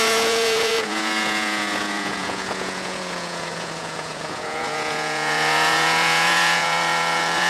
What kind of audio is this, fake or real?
fake